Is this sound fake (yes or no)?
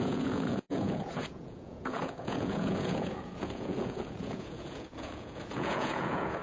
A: yes